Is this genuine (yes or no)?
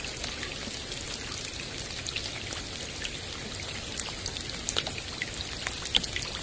yes